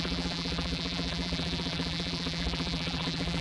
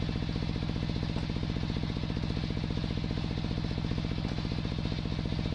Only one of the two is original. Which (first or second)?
second